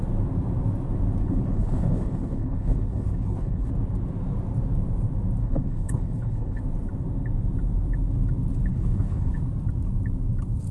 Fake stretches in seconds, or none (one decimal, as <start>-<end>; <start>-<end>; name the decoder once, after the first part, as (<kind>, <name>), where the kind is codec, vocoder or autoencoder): 1.2-3.7 (codec, HILCodec); 5.4-6.6; 8.7-9.4